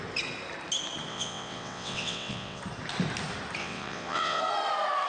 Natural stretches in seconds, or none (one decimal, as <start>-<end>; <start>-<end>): 0.0-1.1; 2.6-3.6; 4.4-5.1